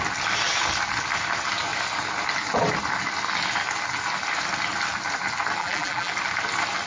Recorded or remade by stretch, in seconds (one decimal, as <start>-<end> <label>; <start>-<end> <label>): 0.0-5.6 recorded; 5.6-6.1 remade; 6.1-6.9 recorded